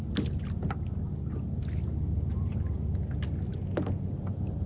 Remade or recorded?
recorded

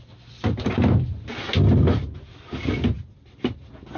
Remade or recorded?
recorded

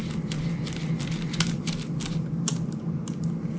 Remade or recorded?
recorded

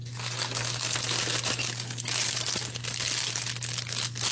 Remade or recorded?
recorded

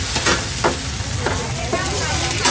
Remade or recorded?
recorded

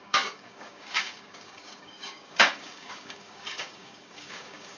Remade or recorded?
remade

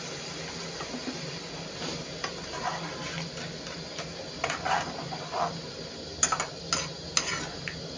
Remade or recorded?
recorded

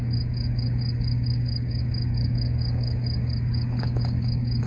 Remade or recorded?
remade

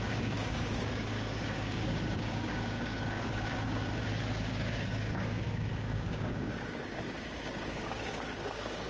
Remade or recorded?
remade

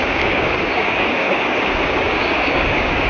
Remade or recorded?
remade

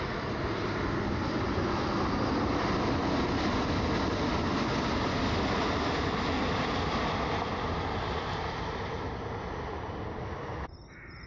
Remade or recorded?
recorded